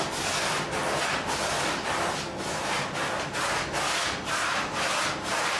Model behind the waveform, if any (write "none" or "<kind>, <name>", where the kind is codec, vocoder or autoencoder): vocoder, BigVGAN v2